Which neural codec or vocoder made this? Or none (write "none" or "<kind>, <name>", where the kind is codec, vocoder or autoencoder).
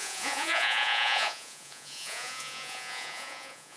vocoder, Vocos